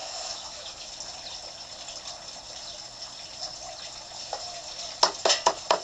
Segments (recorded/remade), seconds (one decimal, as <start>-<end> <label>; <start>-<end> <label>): 0.0-0.9 remade; 0.9-5.8 recorded